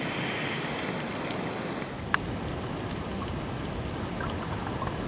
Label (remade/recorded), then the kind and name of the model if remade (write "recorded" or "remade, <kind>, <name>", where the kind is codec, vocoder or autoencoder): recorded